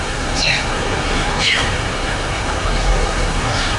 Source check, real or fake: fake